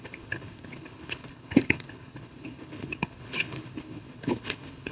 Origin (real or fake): fake